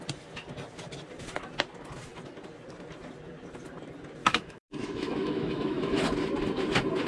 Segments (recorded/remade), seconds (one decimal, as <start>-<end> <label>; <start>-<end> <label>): 0.0-4.2 recorded; 4.2-6.0 remade; 6.0-7.1 recorded

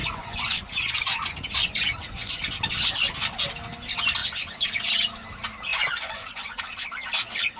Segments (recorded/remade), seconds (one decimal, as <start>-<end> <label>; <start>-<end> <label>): 0.0-2.3 remade; 2.3-4.2 recorded; 4.2-4.9 remade; 4.9-5.7 recorded; 5.7-6.6 remade; 6.6-7.6 recorded

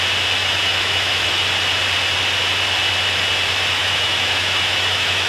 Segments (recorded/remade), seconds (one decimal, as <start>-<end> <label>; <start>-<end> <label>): 0.0-0.4 recorded; 0.4-1.4 remade; 1.4-3.8 recorded; 3.8-5.3 remade

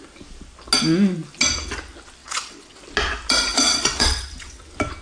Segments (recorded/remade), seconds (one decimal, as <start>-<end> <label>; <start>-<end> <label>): 0.0-2.2 recorded; 2.2-2.8 remade; 2.8-3.5 recorded; 3.5-4.6 remade; 4.6-5.0 recorded

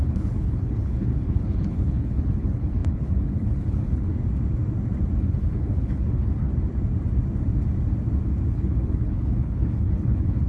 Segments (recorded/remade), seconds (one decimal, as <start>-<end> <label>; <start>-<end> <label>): 0.0-4.1 remade; 4.1-5.2 recorded; 5.2-6.5 remade; 6.5-8.5 recorded; 8.5-10.5 remade

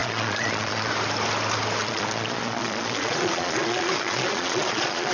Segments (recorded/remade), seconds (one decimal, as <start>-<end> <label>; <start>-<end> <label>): 0.0-0.9 remade; 0.9-1.8 recorded; 1.8-5.1 remade